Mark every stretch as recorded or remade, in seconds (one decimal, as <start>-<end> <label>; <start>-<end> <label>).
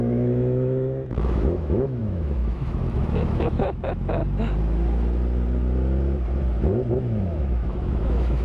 0.0-4.2 remade; 4.2-6.9 recorded; 6.9-8.4 remade